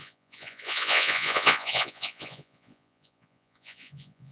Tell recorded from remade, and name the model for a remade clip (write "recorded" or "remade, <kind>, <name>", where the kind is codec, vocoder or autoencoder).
remade, vocoder, Vocos